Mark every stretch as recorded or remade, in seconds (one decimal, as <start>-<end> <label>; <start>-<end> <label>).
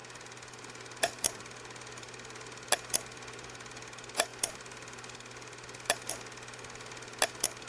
0.0-1.6 remade; 1.6-4.3 recorded; 4.3-6.1 remade; 6.1-7.7 recorded